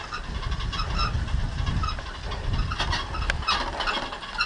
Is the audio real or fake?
real